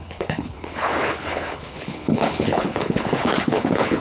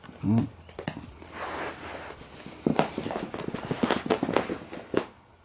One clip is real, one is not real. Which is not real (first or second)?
first